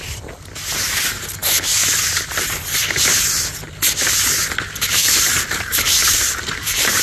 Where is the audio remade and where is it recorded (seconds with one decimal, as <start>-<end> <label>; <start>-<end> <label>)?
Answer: 0.0-5.0 recorded; 5.0-7.0 remade